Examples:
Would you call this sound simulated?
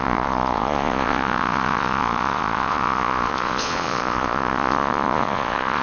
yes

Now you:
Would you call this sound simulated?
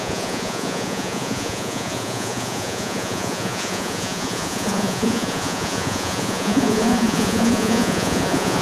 yes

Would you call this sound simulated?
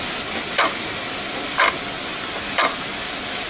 no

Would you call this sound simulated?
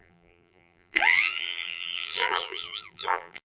yes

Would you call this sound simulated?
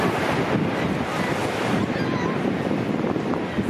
no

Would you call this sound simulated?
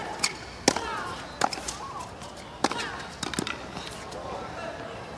no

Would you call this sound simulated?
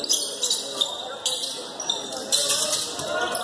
no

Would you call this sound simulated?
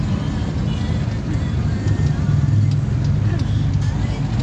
no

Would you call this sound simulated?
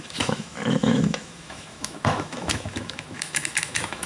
yes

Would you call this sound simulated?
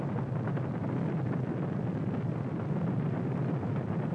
no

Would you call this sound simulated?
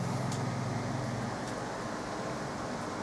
no